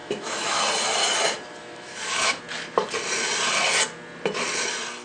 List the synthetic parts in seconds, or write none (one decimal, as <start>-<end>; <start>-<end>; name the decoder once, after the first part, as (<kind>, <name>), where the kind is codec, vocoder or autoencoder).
0.0-0.6 (autoencoder, DAC-VAE); 1.6-2.4